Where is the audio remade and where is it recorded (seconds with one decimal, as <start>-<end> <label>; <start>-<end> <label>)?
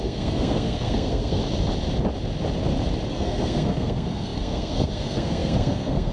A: 0.0-1.4 remade; 1.4-3.1 recorded; 3.1-6.1 remade